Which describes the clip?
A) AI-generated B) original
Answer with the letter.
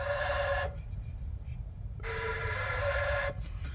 A